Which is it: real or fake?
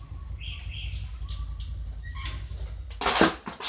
real